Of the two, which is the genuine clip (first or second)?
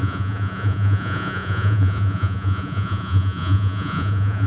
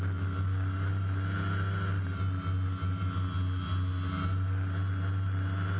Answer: second